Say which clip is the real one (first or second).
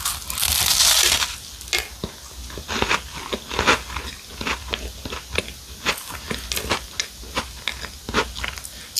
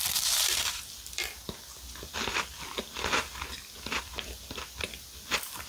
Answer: first